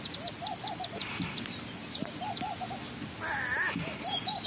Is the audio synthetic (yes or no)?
no